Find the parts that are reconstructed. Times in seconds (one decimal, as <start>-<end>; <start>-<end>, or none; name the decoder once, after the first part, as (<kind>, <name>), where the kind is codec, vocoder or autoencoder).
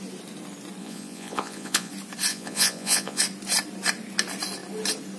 0.8-1.9 (vocoder, Vocos); 2.3-3.2